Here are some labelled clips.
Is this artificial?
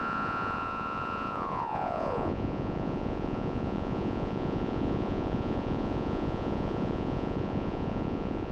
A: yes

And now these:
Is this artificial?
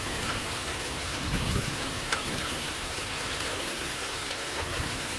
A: yes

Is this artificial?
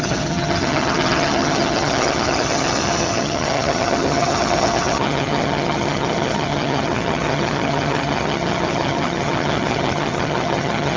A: yes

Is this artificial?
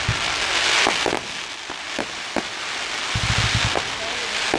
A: no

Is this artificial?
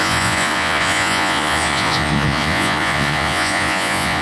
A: yes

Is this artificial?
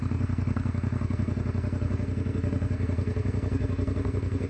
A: yes